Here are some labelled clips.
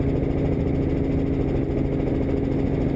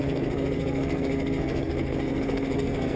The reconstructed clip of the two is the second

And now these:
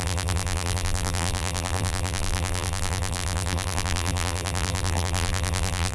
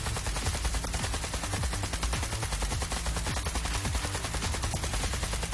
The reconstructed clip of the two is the first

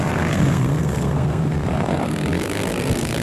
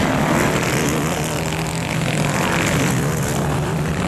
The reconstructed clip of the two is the first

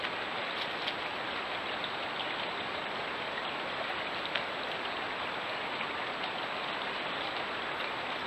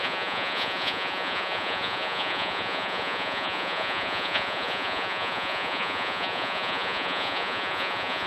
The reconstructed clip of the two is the second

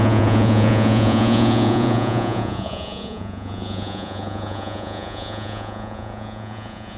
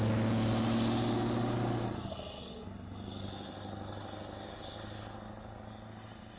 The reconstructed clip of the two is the first